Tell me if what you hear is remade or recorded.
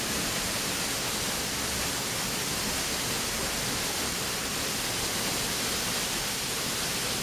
recorded